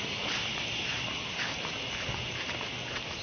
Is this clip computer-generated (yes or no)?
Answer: no